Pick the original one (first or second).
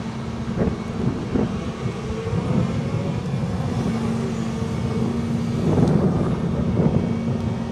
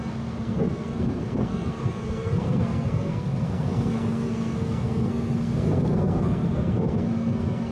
first